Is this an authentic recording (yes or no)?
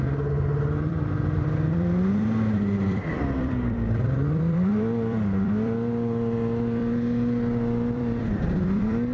no